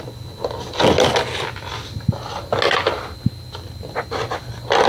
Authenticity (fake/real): real